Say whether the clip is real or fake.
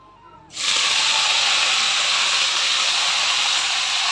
real